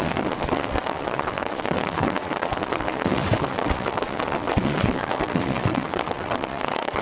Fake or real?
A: fake